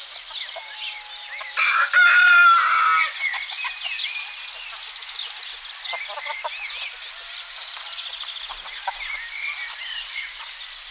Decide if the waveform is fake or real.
real